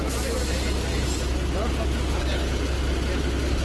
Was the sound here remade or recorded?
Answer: recorded